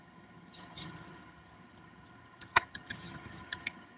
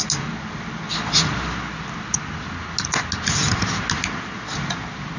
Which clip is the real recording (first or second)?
second